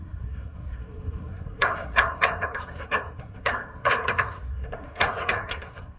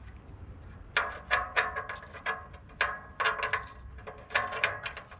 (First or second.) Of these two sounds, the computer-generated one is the first